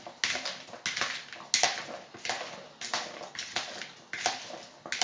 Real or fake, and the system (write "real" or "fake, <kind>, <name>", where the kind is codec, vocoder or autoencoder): real